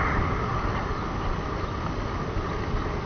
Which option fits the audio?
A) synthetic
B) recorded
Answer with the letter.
B